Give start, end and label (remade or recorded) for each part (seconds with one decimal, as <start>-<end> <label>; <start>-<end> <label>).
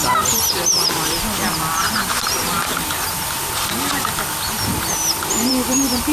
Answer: 0.0-6.1 recorded